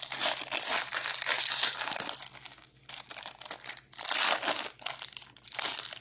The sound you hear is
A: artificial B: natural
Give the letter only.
B